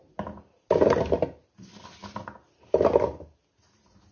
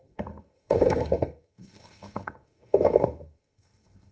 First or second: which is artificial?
second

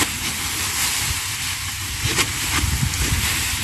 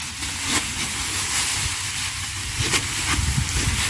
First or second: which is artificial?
first